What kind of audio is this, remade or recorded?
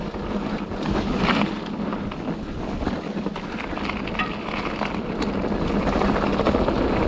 recorded